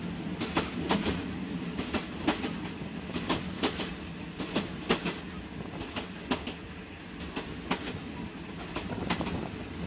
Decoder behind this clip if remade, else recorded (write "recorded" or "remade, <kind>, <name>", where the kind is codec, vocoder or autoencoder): recorded